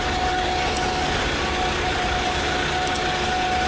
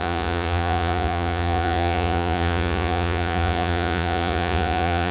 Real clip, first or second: first